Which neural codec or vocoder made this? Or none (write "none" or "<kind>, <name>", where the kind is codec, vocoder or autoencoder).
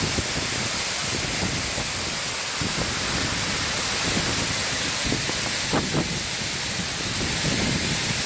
none